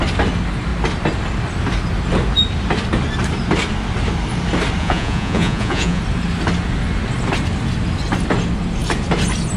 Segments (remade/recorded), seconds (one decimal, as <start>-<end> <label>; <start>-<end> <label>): 0.0-4.8 recorded; 4.8-6.0 remade; 6.0-9.6 recorded

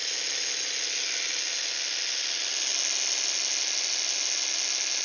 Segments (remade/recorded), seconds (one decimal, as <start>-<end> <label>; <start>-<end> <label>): 0.0-5.0 recorded